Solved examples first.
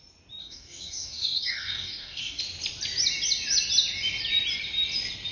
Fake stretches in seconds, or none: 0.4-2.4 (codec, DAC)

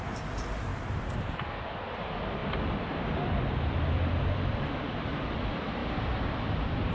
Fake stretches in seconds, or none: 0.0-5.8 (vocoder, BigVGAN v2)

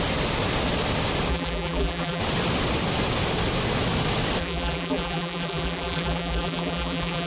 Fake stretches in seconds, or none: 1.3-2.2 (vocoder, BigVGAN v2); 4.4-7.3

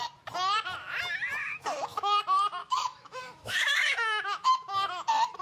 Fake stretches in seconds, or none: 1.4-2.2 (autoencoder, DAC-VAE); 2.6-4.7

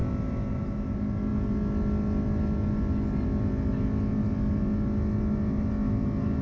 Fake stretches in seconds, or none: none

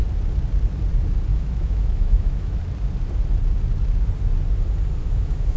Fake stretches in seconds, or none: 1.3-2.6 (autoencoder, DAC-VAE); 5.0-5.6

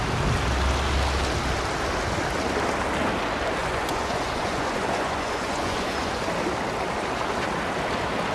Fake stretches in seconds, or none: 3.6-6.3 (vocoder, Vocos)

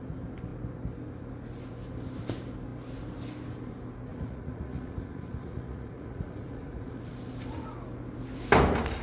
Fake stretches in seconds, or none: 4.1-7.0 (vocoder, Vocos)